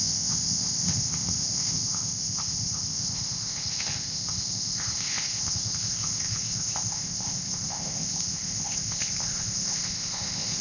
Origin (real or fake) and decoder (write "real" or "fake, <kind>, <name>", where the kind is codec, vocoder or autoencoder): fake, codec, ZipCodec